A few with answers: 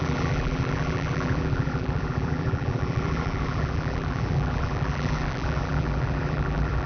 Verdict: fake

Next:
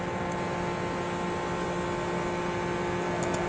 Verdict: real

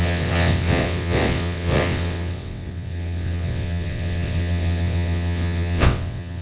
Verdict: fake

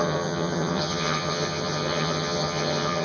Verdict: fake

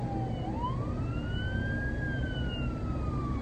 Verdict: real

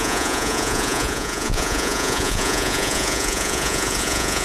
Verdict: fake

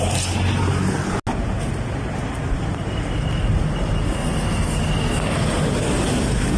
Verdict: real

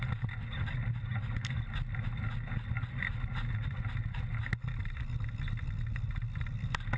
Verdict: real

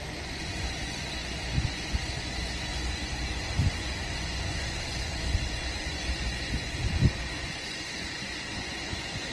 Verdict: fake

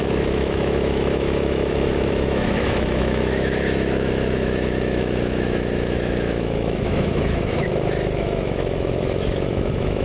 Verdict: fake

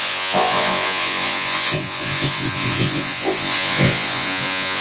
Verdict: fake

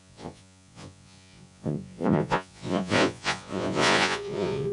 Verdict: fake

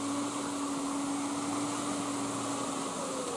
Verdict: real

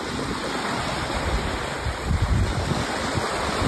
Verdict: real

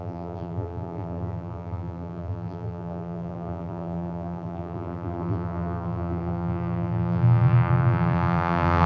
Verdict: fake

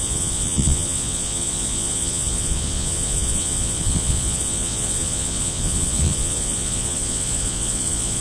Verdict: fake